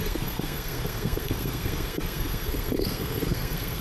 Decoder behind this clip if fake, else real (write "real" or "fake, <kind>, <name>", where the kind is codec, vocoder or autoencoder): fake, codec, SNAC